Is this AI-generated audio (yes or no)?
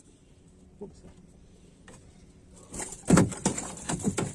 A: yes